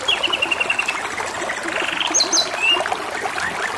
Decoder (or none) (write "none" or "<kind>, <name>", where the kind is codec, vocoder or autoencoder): none